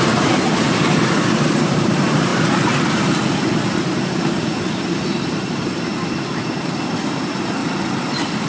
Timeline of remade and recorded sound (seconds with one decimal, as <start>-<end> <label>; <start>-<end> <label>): 0.0-2.3 remade; 2.3-4.9 recorded; 4.9-5.9 remade; 5.9-7.1 recorded; 7.1-8.5 remade

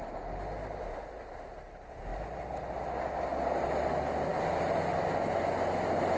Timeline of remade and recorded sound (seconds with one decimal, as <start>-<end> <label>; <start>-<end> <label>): 0.0-6.2 recorded

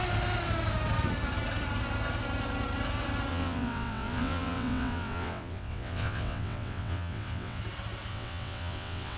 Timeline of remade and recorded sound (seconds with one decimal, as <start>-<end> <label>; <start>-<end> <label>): 0.0-3.3 recorded; 3.3-7.6 remade; 7.6-8.1 recorded; 8.1-9.2 remade

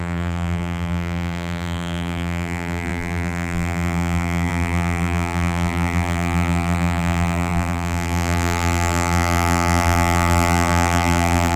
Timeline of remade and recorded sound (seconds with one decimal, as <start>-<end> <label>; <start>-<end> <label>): 0.0-11.6 remade

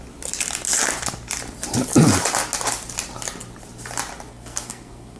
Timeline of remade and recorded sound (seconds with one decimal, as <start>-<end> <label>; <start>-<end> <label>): 0.0-4.3 recorded; 4.3-5.2 remade

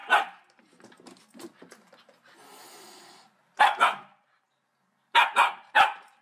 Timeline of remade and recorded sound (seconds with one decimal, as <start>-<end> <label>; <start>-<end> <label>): 0.0-6.2 recorded

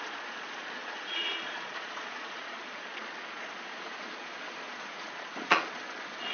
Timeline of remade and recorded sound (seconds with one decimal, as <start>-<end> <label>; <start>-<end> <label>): 0.0-6.3 remade